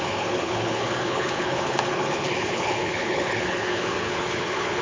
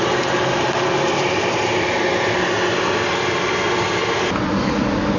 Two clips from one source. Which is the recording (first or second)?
second